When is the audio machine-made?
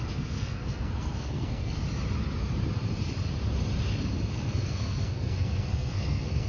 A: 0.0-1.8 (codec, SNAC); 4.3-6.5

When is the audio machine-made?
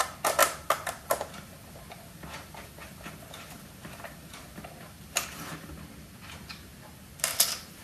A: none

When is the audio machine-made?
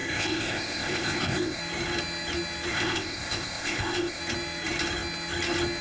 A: 0.0-1.6 (codec, ZipCodec); 2.7-4.2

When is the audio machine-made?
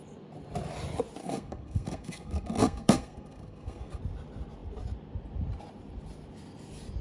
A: 1.2-4.0 (codec, SNAC)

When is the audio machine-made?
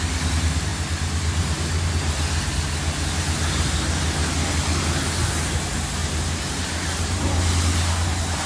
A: 6.0-7.5 (vocoder, BigVGAN v2)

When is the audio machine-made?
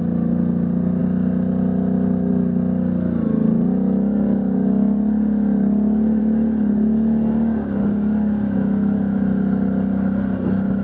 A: none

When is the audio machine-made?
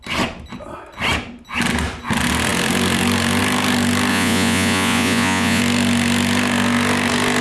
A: 4.1-5.6 (vocoder, Vocos)